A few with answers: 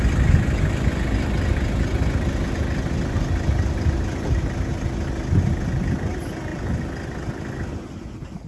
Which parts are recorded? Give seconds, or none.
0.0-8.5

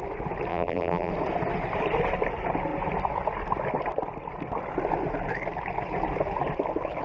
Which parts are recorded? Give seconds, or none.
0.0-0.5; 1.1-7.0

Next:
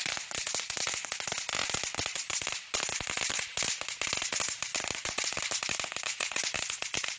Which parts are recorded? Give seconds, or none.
0.0-1.6; 3.3-4.7; 5.4-7.2

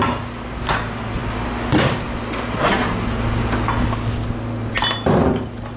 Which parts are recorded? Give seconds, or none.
0.0-5.8

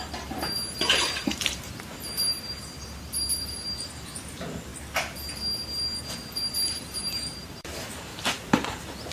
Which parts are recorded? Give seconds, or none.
2.6-3.4; 4.7-6.3; 8.1-8.6

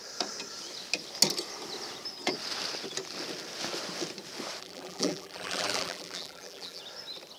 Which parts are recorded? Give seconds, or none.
0.0-4.6; 6.8-7.4